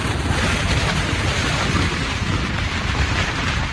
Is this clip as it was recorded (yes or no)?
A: no